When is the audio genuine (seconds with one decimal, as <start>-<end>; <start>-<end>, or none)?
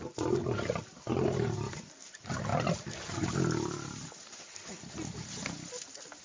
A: 0.0-6.2